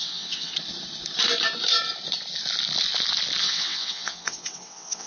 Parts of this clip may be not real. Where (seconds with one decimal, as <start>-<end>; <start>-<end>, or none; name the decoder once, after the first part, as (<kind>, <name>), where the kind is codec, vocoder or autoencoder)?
0.0-0.5 (vocoder, WaveNeXt); 3.4-5.1